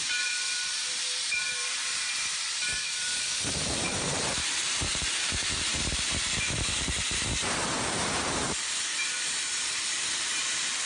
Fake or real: fake